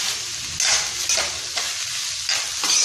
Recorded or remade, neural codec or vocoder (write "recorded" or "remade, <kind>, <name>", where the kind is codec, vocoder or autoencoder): recorded